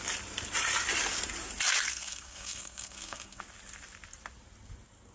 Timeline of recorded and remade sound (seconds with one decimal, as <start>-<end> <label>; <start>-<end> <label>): 0.0-1.9 recorded; 1.9-3.4 remade; 3.4-5.1 recorded